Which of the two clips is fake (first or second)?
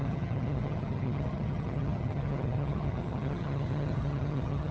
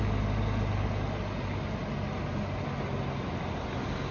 first